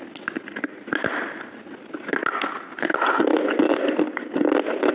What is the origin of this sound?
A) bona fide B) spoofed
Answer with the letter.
A